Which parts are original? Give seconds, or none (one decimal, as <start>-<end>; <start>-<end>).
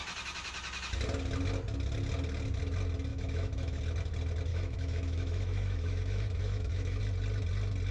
0.0-3.1; 3.8-4.5; 7.0-7.9